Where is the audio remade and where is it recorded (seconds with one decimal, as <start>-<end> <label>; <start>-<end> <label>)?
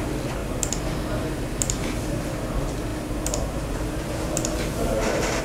0.0-5.4 recorded